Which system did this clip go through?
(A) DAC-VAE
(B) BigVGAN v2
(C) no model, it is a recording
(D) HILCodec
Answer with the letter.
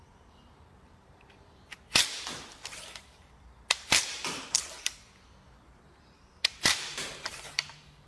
B